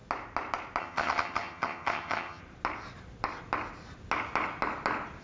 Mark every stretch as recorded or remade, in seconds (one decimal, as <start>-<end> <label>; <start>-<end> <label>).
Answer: 0.0-0.8 recorded; 0.8-2.4 remade; 2.4-5.2 recorded